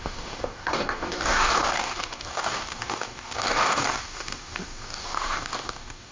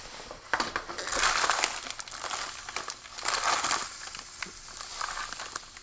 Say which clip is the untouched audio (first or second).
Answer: second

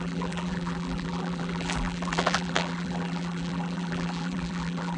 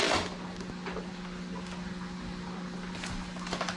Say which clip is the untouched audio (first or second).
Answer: second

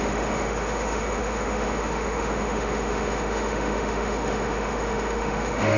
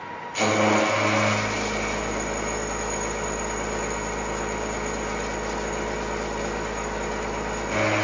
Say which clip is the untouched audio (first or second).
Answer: second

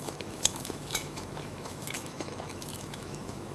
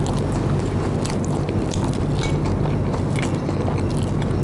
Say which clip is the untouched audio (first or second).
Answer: second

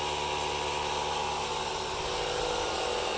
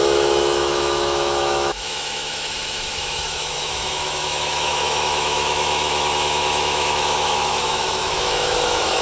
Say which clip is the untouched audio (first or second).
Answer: first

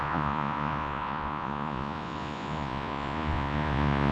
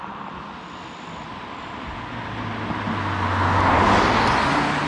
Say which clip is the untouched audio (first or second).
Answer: second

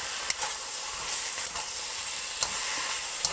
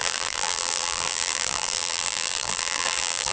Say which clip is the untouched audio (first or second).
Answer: first